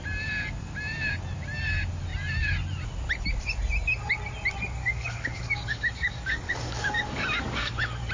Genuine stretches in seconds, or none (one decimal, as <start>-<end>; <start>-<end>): 0.0-4.8